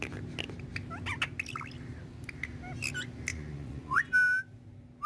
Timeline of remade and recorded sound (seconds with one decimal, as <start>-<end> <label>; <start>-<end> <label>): 0.0-3.3 recorded; 3.3-4.1 remade; 4.1-5.1 recorded